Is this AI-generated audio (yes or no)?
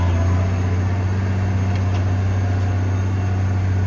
no